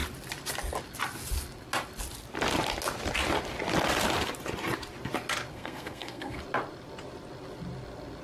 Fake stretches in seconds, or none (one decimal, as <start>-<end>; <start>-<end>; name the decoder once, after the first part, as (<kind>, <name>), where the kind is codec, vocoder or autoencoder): 5.5-6.4 (codec, SNAC)